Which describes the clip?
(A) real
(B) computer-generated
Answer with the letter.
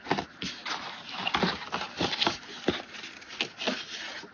A